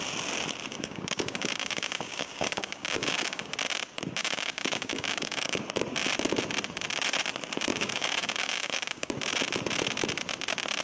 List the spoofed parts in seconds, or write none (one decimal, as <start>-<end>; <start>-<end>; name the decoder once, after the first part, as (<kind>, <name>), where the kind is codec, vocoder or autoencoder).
0.7-3.5 (codec, DAC); 4.2-5.6; 7.7-9.1